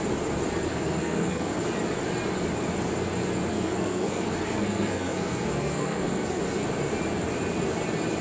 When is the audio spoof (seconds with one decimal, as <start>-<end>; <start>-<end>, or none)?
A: 0.7-1.5; 3.5-6.4